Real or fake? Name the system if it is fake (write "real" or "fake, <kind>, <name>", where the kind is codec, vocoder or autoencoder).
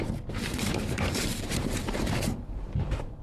fake, vocoder, BigVGAN v2